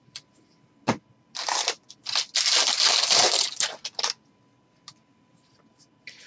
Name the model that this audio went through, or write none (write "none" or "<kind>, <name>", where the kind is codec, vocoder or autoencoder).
none